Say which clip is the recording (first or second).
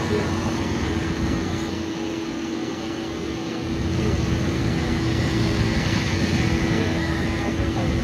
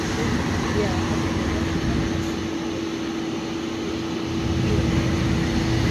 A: second